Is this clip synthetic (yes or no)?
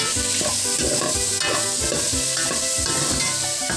no